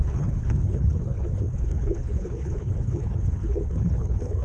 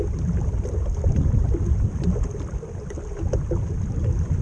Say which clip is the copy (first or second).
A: first